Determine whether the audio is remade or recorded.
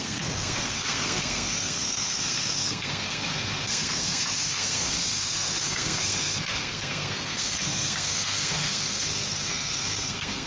remade